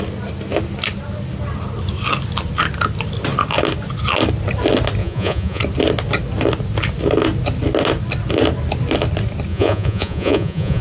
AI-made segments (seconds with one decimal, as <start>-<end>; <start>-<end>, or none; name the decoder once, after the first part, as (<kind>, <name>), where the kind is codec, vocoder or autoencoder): 5.0-5.6 (vocoder, Vocos); 9.5-10.8